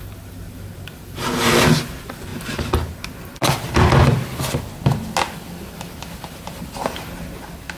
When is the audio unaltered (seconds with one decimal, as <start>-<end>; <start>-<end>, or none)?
0.0-7.8